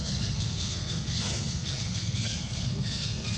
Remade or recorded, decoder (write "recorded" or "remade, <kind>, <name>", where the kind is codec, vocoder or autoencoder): remade, codec, SNAC